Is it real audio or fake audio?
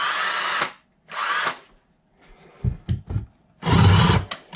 real